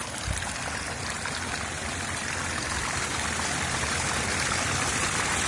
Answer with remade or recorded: recorded